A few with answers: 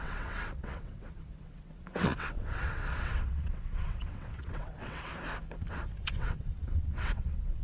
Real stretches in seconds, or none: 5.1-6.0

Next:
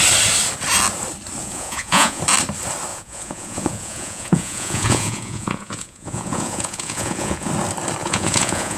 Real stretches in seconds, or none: 0.0-1.4; 2.2-2.9; 7.5-8.0

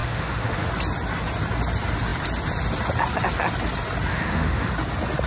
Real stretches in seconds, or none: 0.7-4.1; 4.7-5.3